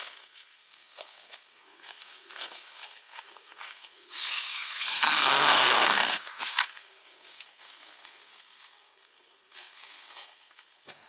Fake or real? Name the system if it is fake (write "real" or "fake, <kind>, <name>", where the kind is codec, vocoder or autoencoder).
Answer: fake, codec, SNAC